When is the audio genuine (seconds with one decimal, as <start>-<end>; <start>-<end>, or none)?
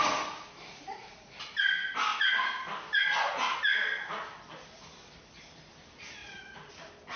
0.0-0.7; 1.3-6.2; 6.7-7.2